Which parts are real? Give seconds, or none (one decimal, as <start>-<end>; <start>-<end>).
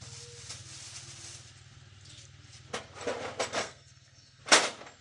0.0-3.6; 4.4-5.0